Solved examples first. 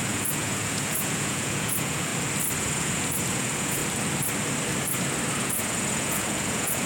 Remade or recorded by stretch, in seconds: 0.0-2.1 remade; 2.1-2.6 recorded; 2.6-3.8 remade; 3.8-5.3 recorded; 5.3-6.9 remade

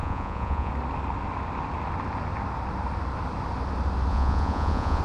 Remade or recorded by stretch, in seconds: 0.0-0.7 remade; 0.7-4.1 recorded; 4.1-5.0 remade